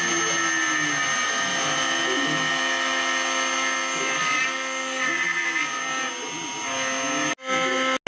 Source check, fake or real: real